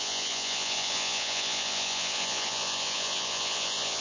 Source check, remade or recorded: remade